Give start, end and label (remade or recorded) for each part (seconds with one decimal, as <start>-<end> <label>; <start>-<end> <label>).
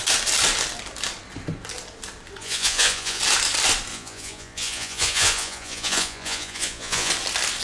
0.0-2.4 recorded; 2.4-3.2 remade; 3.2-3.9 recorded; 3.9-7.1 remade; 7.1-7.6 recorded